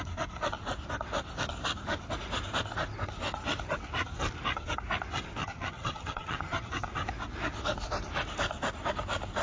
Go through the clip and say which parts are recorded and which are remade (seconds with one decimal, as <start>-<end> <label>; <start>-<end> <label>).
0.0-5.4 recorded; 5.4-6.7 remade; 6.7-9.4 recorded